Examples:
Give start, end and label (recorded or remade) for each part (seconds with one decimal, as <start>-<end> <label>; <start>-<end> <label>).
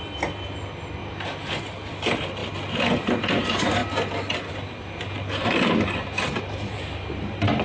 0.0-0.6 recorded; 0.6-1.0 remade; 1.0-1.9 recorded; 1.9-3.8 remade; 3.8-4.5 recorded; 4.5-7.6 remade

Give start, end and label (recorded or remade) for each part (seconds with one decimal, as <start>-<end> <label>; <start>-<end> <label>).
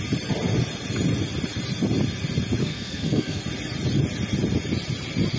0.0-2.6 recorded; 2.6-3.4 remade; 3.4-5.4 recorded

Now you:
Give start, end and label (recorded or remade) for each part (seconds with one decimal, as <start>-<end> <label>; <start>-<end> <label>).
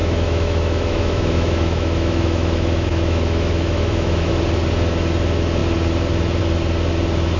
0.0-4.3 remade; 4.3-7.4 recorded